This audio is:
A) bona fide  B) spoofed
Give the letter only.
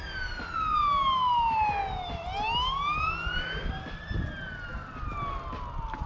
A